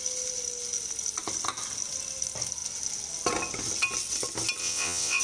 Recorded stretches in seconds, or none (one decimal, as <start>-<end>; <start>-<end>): 0.0-4.6